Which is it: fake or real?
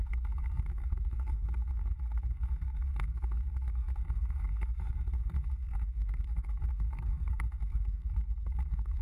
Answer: fake